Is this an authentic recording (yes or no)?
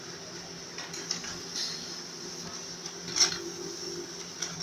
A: yes